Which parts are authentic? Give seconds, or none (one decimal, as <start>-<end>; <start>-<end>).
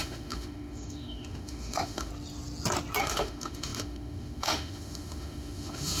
2.1-3.0